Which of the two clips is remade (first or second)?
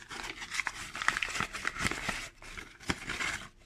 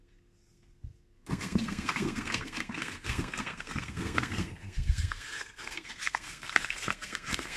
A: second